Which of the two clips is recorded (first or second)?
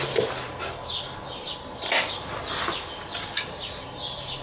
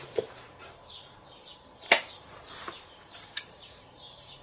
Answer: first